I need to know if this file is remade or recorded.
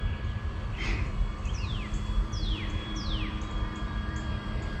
remade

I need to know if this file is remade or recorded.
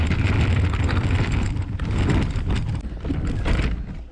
recorded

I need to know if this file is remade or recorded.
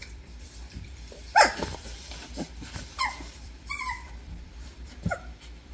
remade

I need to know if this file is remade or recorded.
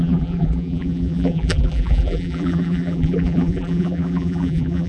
remade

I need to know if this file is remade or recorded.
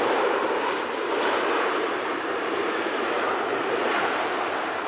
remade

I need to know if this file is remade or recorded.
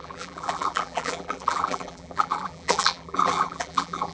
remade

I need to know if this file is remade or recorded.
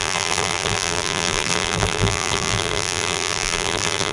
remade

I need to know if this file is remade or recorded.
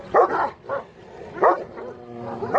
remade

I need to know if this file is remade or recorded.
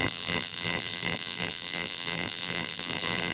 remade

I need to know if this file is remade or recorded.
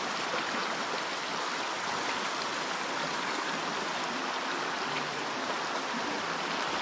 recorded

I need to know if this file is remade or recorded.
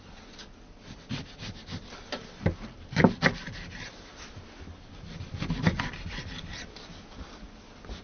recorded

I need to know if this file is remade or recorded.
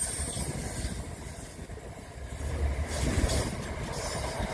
recorded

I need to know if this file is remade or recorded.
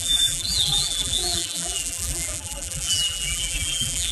remade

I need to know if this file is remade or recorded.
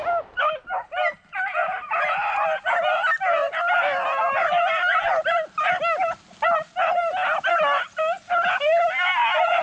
recorded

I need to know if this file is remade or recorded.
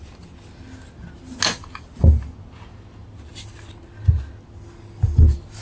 recorded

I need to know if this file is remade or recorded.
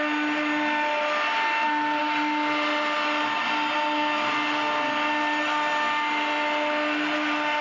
recorded